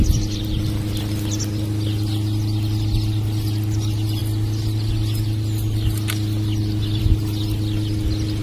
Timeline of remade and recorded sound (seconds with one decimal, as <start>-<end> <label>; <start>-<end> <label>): 0.0-8.4 recorded